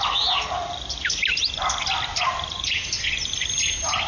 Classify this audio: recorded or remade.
recorded